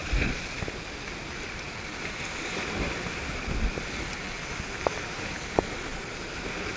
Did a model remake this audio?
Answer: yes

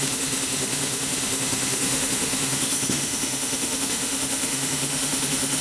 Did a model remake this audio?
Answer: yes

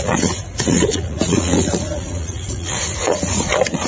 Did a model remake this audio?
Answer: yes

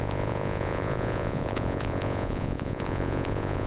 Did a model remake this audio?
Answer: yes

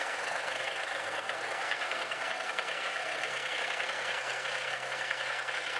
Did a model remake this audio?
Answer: yes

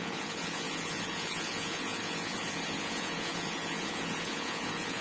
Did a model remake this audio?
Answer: yes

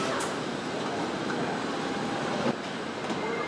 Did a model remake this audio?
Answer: no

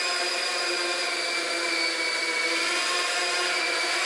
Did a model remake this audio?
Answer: no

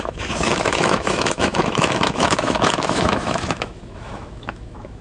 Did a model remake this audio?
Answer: yes